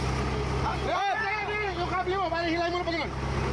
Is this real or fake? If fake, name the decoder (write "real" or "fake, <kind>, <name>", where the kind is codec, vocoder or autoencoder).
real